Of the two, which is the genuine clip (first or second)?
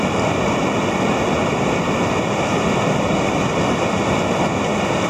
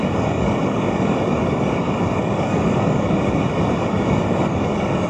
first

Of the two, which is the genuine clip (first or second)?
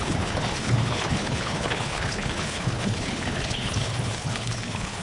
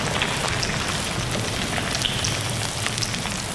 second